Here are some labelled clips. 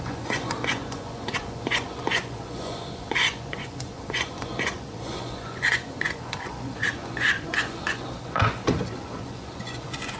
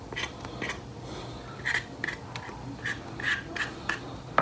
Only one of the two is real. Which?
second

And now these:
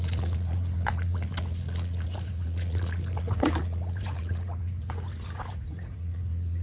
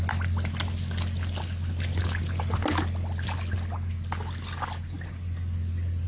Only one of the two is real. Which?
second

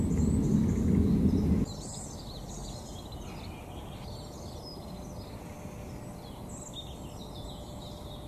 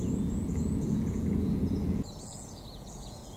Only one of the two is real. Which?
first